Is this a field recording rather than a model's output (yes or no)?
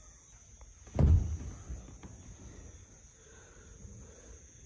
yes